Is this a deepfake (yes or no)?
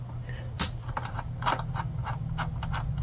no